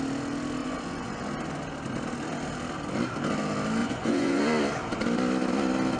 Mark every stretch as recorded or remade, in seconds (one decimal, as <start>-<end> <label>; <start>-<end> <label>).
0.0-0.6 recorded; 0.6-1.2 remade; 1.2-3.8 recorded; 3.8-4.4 remade; 4.4-6.0 recorded